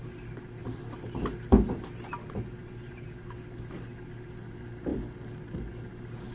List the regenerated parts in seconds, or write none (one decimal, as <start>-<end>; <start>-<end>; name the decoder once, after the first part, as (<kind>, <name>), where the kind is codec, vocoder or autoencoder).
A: none